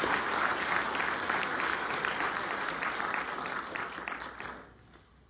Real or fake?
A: real